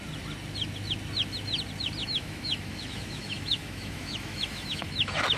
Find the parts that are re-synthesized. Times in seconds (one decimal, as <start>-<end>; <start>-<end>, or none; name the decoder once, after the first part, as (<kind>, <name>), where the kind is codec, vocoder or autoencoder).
2.0-5.4 (autoencoder, DAC-VAE)